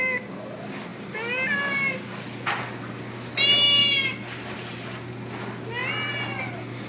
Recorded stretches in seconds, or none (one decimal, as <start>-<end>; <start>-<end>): 0.0-6.9